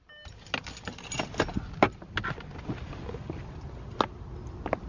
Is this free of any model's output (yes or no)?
yes